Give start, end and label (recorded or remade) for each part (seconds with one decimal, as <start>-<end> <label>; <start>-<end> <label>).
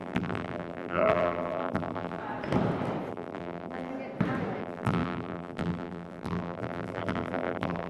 0.0-2.2 remade; 2.2-3.1 recorded; 3.1-3.9 remade; 3.9-4.6 recorded; 4.6-7.9 remade